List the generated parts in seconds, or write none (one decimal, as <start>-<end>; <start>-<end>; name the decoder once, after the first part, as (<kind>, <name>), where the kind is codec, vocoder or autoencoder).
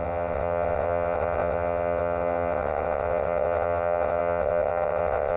0.0-5.4 (vocoder, WaveNeXt)